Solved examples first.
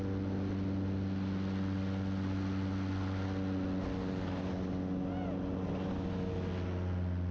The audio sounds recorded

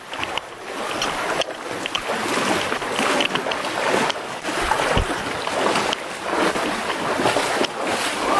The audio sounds recorded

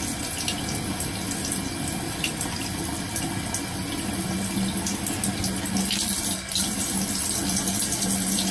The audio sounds recorded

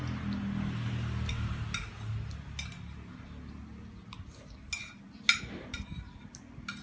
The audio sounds recorded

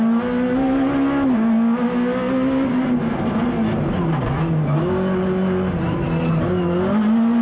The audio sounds recorded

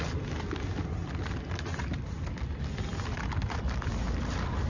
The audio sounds recorded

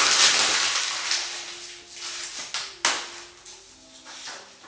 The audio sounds recorded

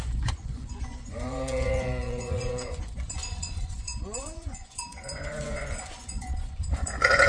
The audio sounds remade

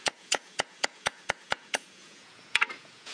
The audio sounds remade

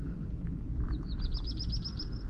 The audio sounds remade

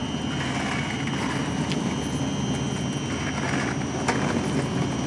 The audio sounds recorded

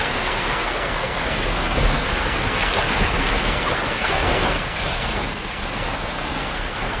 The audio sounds remade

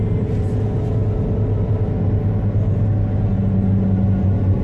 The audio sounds recorded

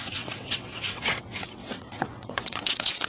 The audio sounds remade